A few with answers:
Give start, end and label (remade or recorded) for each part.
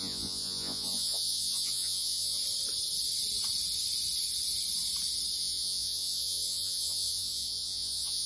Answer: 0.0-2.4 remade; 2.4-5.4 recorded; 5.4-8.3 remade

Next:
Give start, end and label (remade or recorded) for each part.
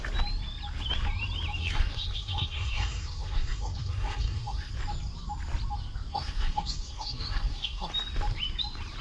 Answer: 0.0-1.6 recorded; 1.6-4.7 remade; 4.7-6.1 recorded; 6.1-7.9 remade; 7.9-9.0 recorded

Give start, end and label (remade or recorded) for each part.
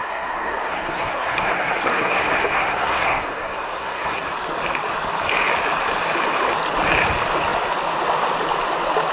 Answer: 0.0-4.2 remade; 4.2-9.1 recorded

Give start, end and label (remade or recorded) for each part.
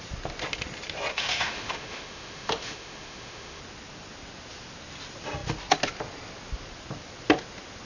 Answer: 0.0-1.1 recorded; 1.1-3.6 remade; 3.6-7.9 recorded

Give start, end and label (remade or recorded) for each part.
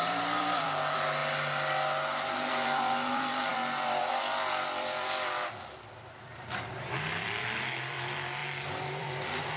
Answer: 0.0-1.2 remade; 1.2-2.5 recorded; 2.5-9.6 remade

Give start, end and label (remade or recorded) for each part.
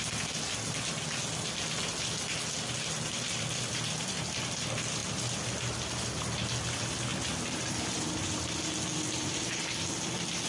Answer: 0.0-10.5 recorded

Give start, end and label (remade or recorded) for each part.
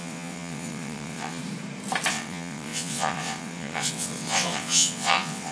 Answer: 0.0-1.4 remade; 1.4-2.1 recorded; 2.1-5.5 remade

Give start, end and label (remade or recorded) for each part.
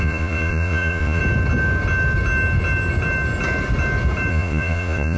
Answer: 0.0-1.2 remade; 1.2-4.3 recorded; 4.3-5.2 remade